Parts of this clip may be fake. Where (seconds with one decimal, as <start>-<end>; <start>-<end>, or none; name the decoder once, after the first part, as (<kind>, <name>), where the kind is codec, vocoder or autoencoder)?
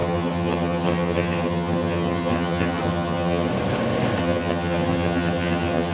0.0-3.5 (vocoder, HiFi-GAN); 4.2-5.9